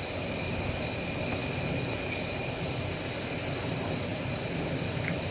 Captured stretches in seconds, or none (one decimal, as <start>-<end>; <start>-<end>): 0.0-1.4; 3.3-4.1

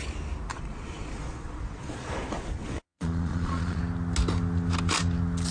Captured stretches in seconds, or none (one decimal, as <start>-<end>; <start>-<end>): 0.0-0.5; 3.8-5.5

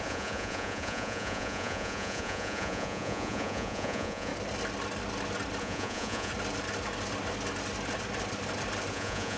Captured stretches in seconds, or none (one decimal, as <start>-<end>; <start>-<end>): 4.3-5.6; 6.3-8.9

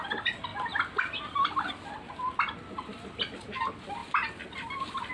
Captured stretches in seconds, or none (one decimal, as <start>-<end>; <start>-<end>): 0.0-5.1

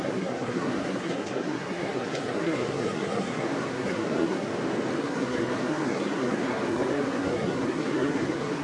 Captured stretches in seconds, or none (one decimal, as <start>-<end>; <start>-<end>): 4.5-5.0